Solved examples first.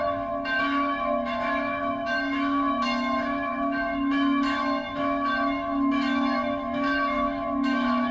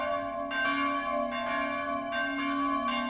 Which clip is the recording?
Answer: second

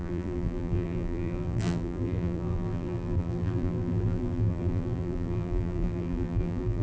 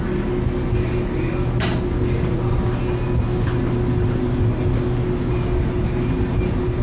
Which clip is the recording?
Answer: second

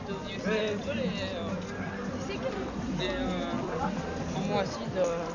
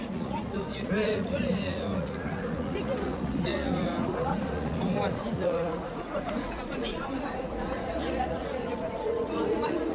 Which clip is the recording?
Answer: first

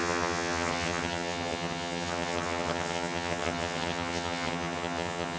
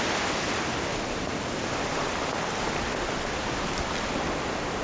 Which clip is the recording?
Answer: second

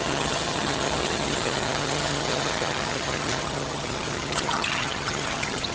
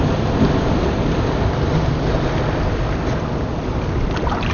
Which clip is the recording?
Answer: second